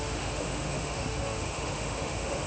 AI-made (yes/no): yes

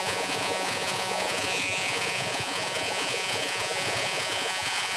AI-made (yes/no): yes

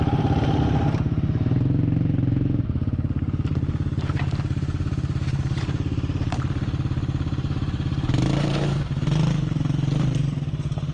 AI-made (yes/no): yes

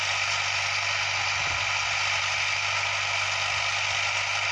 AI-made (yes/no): no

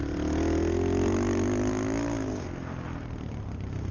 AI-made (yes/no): no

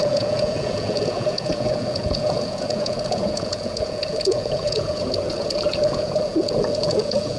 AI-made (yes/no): yes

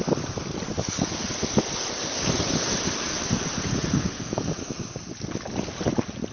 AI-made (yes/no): no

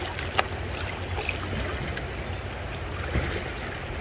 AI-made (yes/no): no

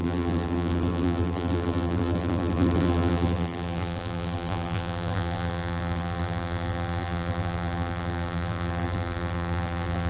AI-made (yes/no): yes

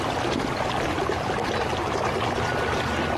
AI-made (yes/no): yes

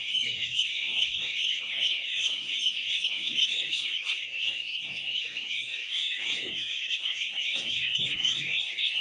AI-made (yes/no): yes